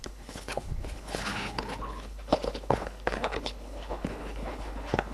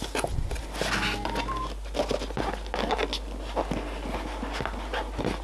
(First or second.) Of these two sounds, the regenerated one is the first